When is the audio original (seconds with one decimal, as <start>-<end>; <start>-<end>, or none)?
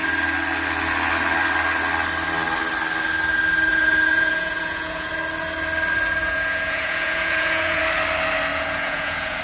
0.0-3.7; 5.1-6.2; 7.8-8.5